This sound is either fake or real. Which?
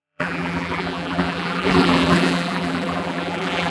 fake